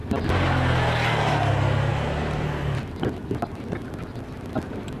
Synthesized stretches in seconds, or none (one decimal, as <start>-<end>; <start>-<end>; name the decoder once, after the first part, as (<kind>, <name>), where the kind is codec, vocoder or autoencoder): none